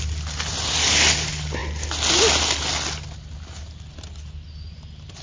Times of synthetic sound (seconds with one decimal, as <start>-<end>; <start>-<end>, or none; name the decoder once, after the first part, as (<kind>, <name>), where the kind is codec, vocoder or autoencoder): none